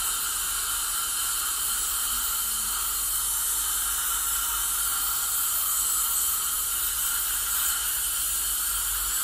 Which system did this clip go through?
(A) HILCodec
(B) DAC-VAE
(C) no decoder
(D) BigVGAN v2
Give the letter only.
C